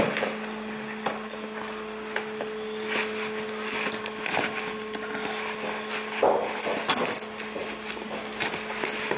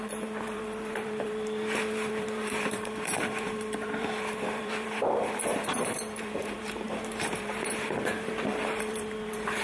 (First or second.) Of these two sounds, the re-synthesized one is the second